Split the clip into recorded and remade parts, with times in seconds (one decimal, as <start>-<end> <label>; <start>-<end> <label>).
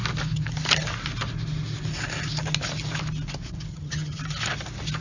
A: 0.0-3.7 recorded; 3.7-4.2 remade; 4.2-5.0 recorded